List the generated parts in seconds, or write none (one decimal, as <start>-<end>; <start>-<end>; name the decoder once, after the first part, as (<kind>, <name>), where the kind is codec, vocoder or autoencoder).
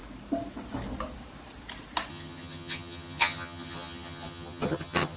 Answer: 2.1-5.2 (vocoder, HiFi-GAN)